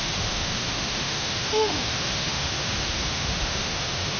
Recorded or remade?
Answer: remade